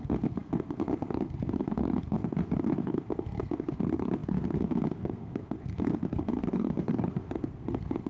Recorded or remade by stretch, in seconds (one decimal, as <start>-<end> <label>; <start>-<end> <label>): 0.0-8.1 remade